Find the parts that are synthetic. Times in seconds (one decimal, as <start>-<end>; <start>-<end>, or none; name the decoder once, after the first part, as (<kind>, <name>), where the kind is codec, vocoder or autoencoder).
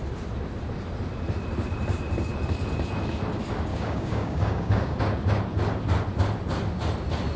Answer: 3.7-5.0 (codec, DAC)